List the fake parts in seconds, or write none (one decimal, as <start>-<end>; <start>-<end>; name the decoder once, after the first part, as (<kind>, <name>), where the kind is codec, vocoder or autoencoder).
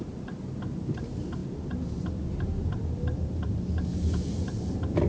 1.4-2.7 (vocoder, BigVGAN v2)